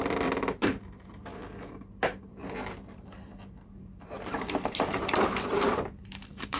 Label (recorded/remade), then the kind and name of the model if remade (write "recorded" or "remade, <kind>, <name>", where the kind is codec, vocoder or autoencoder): remade, vocoder, BigVGAN v2